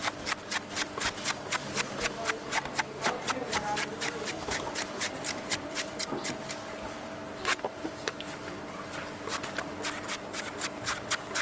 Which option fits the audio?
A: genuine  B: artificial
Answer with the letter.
A